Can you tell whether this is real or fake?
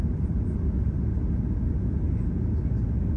real